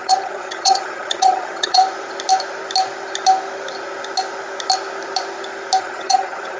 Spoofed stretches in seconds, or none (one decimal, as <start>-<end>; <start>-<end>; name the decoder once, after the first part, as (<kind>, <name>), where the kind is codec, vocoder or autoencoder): 0.0-1.8 (vocoder, HiFi-GAN); 5.8-6.6